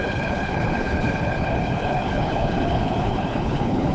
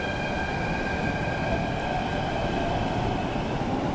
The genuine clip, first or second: second